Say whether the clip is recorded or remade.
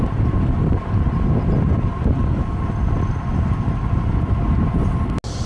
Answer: recorded